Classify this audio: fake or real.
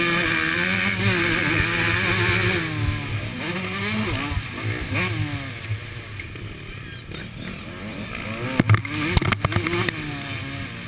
real